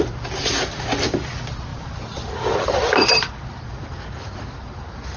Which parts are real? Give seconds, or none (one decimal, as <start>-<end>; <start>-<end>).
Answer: 0.0-1.7; 3.6-5.2